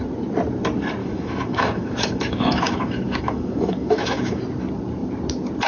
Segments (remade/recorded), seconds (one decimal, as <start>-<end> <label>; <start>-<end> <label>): 0.0-1.0 recorded; 1.0-4.4 remade; 4.4-5.7 recorded